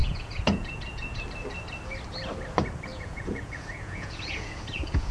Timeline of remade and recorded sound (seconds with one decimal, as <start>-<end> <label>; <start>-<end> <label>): 0.0-1.2 remade; 1.2-2.9 recorded; 2.9-5.1 remade

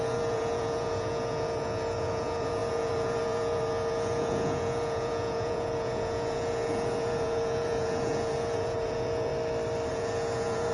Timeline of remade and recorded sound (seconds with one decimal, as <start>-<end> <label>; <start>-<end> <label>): 0.0-9.3 remade; 9.3-9.9 recorded; 9.9-10.7 remade